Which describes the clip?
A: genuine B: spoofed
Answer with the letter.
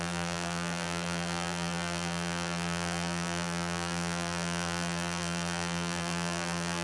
B